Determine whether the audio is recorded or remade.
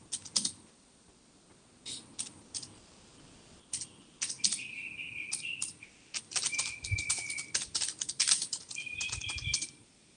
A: recorded